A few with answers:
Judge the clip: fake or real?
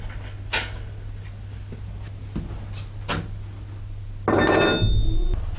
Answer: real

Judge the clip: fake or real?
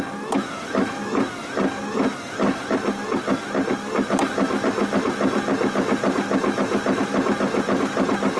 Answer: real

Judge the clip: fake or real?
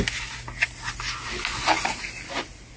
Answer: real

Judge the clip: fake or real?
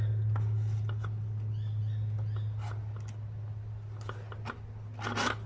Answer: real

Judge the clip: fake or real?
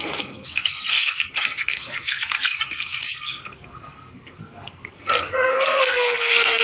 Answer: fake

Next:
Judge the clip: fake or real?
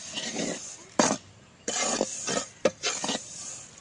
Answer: real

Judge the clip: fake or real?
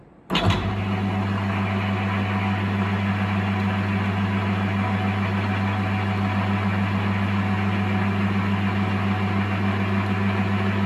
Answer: real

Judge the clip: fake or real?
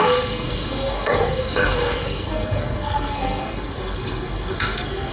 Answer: fake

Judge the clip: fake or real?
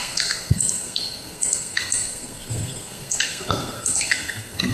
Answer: fake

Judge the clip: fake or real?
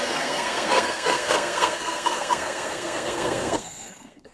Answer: fake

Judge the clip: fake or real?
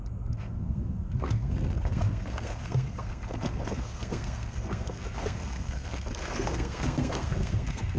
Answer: fake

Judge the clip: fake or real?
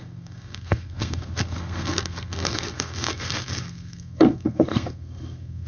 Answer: fake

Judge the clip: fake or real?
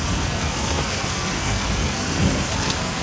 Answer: fake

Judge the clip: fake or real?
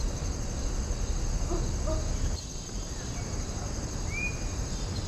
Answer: real